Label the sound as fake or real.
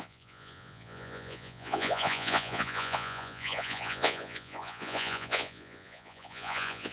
fake